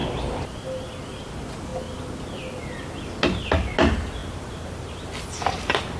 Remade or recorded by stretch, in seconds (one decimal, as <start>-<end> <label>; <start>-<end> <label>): 0.0-1.2 remade; 1.2-4.2 recorded; 4.2-4.9 remade; 4.9-6.0 recorded